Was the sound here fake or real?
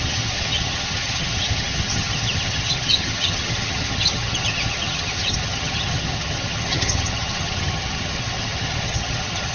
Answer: fake